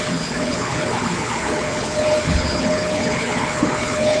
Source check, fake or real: fake